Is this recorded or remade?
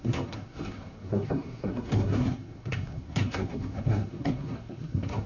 remade